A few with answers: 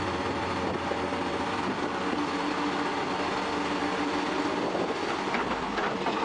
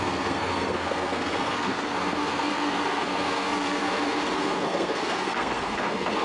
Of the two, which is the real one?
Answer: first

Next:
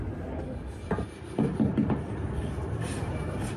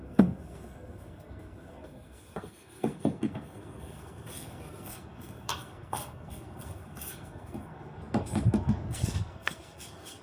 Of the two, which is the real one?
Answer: first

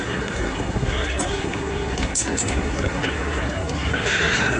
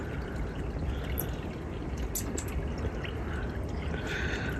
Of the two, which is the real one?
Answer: second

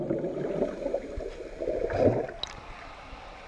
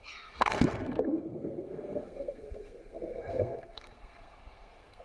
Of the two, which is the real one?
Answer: first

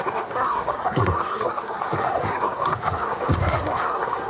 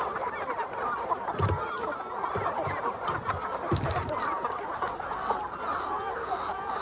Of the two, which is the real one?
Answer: second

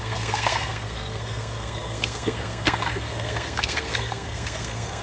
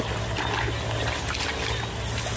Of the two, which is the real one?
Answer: second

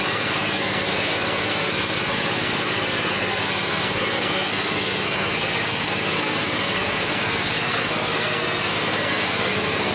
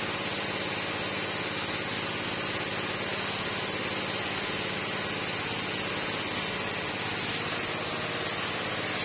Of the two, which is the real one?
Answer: second